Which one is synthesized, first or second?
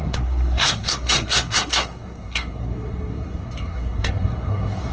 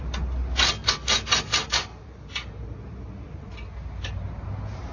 first